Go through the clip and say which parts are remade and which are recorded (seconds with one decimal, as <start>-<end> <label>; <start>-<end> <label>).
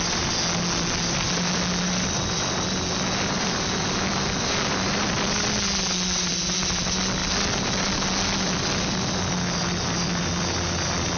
0.0-11.2 recorded